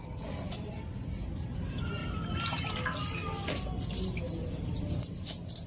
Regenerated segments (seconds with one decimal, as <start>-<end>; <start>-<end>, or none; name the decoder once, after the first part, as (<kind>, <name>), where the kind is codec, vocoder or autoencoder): none